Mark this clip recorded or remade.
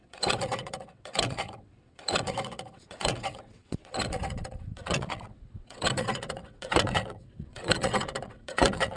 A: remade